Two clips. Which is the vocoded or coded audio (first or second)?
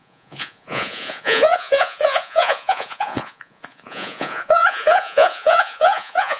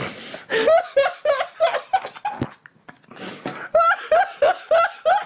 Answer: first